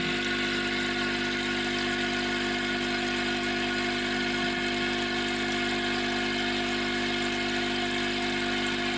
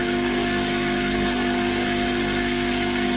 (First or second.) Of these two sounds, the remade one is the second